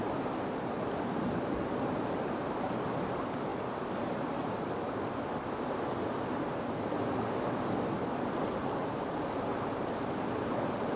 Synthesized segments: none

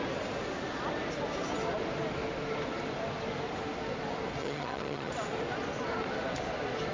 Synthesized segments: 4.4-5.1 (vocoder, HiFi-GAN)

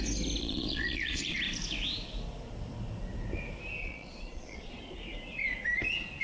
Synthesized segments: 0.4-1.4 (vocoder, Vocos); 3.8-4.7